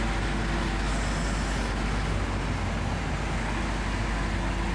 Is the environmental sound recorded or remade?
recorded